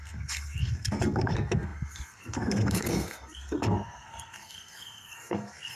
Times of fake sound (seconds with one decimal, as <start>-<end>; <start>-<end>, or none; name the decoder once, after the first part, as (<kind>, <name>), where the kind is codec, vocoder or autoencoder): 0.0-5.8 (codec, SNAC)